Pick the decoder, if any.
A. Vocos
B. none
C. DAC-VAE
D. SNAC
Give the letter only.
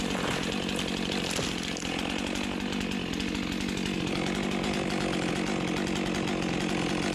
B